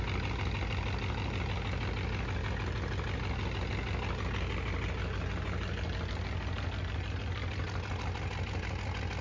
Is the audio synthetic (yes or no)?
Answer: no